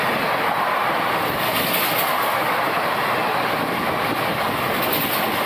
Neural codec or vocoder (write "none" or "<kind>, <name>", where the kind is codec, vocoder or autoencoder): none